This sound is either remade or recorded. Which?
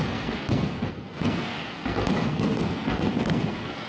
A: remade